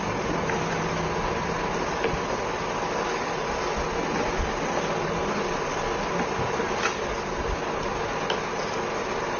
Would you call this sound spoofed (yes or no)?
no